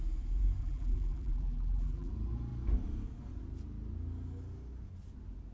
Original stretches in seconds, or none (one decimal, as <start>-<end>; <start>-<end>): 0.0-0.6; 2.1-5.5